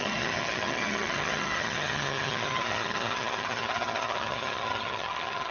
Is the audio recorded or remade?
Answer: remade